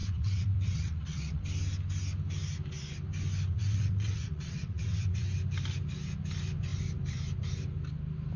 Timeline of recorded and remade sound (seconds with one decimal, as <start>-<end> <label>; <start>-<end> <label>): 0.0-1.4 remade; 1.4-3.5 recorded; 3.5-5.3 remade; 5.3-8.4 recorded